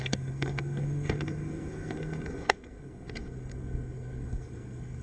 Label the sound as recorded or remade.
remade